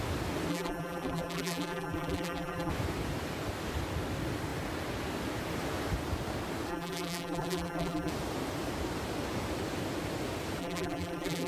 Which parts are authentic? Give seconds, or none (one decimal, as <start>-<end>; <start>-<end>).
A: 0.0-0.5; 2.7-6.7; 8.1-10.6